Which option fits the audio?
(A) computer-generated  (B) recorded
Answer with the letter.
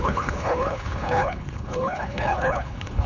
A